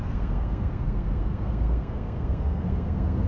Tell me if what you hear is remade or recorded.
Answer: remade